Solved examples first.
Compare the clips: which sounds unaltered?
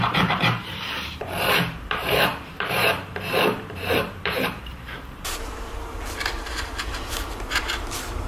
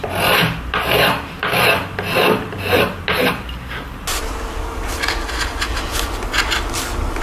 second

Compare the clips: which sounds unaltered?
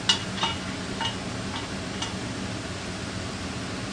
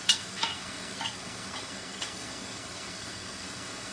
first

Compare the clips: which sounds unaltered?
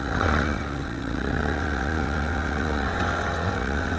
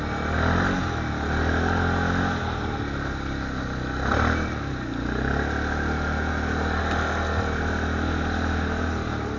second